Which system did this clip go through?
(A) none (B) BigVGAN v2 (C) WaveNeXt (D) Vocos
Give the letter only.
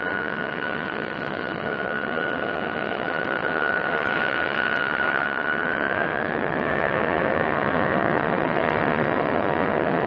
C